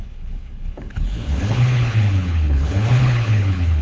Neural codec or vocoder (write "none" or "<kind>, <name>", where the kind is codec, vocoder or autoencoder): codec, HILCodec